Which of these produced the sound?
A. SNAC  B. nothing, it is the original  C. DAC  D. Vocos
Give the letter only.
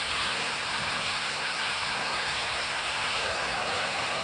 A